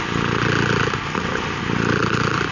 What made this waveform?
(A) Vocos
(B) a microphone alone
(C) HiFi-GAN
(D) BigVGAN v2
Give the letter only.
B